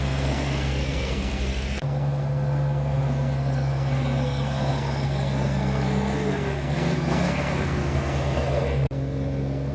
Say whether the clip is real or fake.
fake